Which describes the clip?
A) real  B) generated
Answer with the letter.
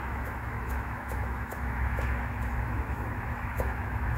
B